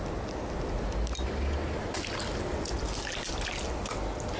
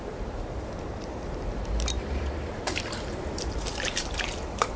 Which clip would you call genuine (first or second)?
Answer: first